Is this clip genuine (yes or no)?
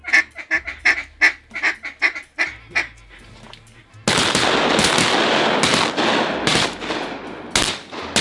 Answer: yes